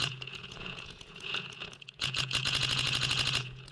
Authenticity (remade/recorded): remade